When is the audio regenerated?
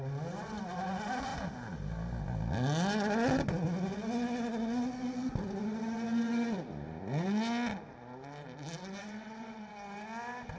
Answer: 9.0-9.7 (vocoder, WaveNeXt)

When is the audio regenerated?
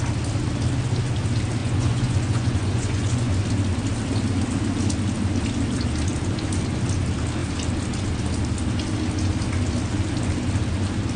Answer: 1.6-3.3 (vocoder, Vocos)